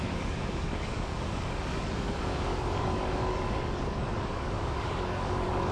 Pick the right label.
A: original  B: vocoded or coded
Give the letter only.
B